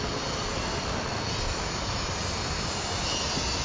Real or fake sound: real